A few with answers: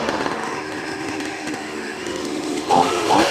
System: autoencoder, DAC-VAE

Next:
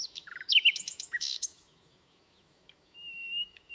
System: autoencoder, DAC-VAE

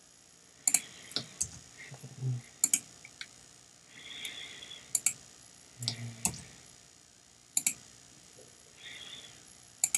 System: none